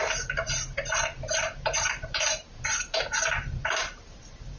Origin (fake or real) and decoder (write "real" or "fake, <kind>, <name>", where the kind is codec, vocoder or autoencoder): fake, vocoder, BigVGAN v2